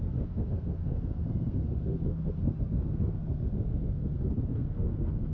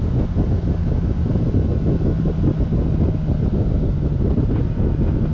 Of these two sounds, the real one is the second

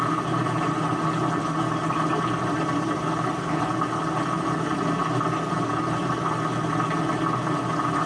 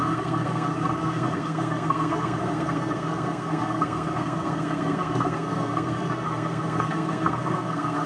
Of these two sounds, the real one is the first